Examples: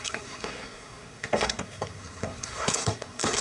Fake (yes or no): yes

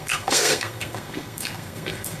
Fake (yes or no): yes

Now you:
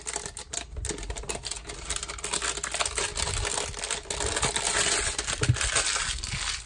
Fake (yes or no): no